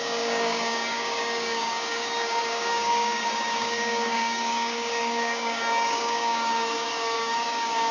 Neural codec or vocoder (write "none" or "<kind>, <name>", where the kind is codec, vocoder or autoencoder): codec, DAC